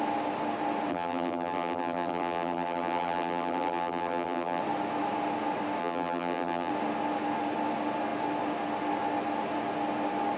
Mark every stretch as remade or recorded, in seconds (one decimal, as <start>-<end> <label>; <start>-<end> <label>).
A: 0.0-0.9 recorded; 0.9-4.6 remade; 4.6-5.8 recorded; 5.8-6.7 remade; 6.7-10.4 recorded